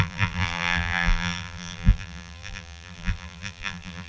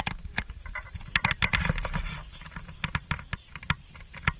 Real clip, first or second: second